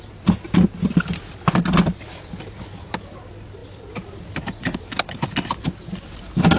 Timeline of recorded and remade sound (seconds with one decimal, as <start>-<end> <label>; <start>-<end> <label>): 0.0-6.6 recorded